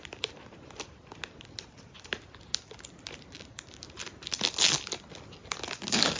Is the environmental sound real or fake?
real